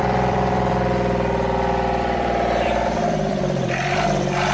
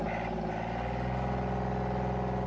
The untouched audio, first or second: second